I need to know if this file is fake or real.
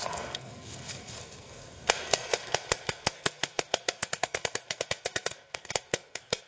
fake